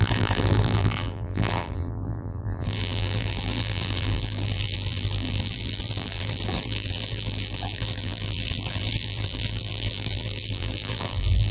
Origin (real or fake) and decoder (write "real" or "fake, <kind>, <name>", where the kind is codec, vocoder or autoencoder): fake, vocoder, BigVGAN v2